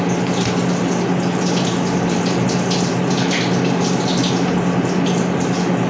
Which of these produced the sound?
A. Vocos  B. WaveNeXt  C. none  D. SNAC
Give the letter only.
C